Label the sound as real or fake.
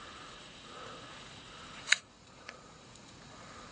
fake